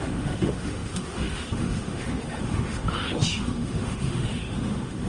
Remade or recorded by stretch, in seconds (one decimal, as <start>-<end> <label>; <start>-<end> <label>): 0.0-5.1 remade